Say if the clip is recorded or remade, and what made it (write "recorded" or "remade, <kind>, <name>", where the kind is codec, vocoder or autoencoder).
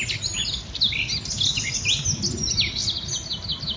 recorded